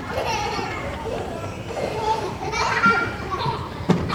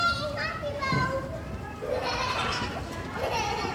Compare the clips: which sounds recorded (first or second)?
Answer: second